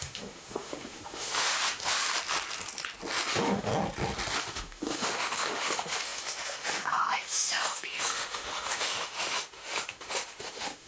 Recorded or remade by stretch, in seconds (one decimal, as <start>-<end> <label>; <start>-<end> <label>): 0.0-2.1 remade; 2.1-3.3 recorded; 3.3-3.7 remade; 3.7-4.4 recorded; 4.4-10.9 remade